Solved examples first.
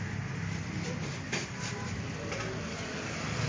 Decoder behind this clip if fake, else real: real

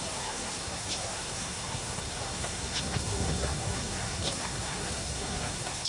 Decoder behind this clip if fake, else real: fake, codec, SNAC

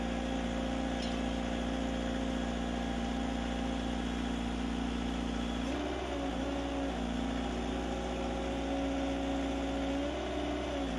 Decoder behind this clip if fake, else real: real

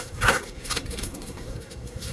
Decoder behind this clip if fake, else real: fake, codec, SNAC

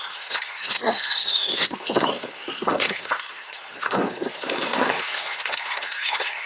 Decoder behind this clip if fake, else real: fake, codec, SNAC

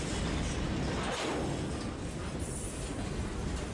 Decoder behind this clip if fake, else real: real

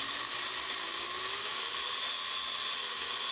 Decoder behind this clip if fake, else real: real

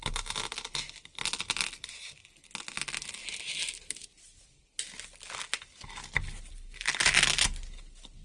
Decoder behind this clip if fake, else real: real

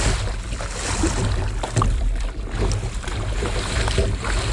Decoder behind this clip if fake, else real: real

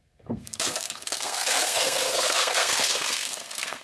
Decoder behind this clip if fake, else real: fake, codec, SNAC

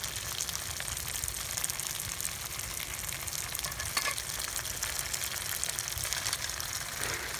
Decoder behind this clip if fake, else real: real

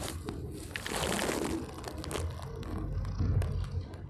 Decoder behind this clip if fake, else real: real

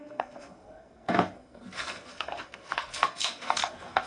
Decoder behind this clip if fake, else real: fake, codec, SNAC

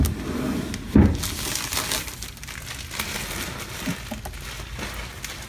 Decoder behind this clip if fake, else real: real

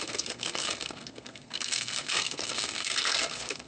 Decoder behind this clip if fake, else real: fake, codec, SNAC